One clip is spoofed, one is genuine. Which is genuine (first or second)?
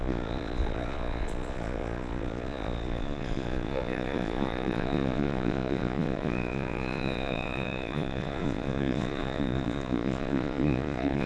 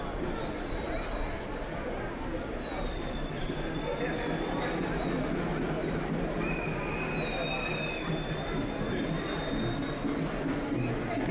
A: second